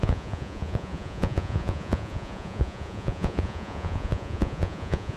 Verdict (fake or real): fake